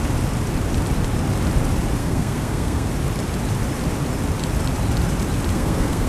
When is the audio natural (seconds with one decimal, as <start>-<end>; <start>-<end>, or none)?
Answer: 0.0-2.0; 2.9-5.5